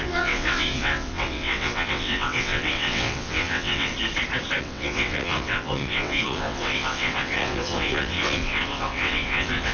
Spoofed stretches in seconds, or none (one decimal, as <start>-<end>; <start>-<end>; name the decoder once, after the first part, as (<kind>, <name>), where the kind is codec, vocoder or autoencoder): 0.0-3.9 (vocoder, WaveNeXt); 4.6-9.7